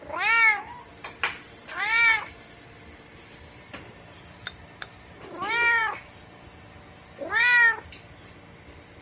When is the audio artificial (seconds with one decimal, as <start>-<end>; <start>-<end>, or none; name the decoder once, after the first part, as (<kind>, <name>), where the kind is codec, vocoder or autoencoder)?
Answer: 0.9-5.2 (vocoder, BigVGAN v2); 5.8-7.3